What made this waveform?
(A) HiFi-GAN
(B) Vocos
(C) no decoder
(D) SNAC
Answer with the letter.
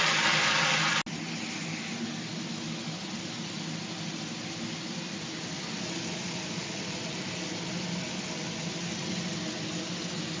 C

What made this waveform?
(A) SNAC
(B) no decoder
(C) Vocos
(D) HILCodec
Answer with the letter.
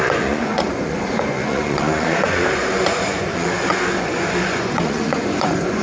C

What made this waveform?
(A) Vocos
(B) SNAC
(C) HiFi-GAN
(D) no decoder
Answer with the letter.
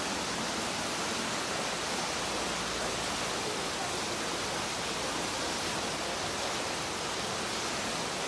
D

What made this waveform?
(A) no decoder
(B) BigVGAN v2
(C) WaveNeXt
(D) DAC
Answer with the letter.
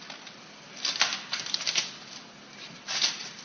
B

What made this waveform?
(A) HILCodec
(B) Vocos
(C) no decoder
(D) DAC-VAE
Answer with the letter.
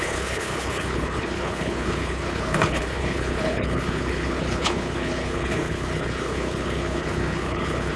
A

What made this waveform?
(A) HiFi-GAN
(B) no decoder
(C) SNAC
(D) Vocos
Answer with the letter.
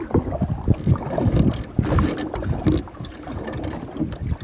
B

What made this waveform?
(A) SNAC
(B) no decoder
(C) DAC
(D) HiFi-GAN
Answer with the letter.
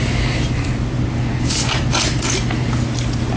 B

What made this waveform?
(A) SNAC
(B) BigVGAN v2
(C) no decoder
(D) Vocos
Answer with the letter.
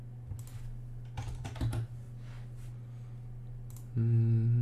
C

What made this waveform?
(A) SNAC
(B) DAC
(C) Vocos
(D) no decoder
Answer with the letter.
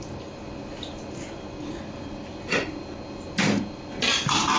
D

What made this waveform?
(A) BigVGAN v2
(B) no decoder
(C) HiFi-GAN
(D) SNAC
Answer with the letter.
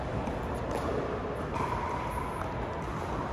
B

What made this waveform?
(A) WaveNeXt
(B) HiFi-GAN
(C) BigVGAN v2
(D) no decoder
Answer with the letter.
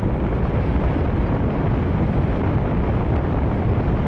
D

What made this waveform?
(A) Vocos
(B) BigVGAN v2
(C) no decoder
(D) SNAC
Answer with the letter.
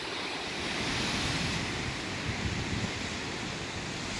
C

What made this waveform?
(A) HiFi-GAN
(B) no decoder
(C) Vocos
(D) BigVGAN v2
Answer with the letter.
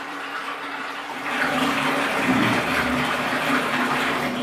D